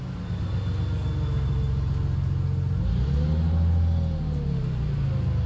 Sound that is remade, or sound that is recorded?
recorded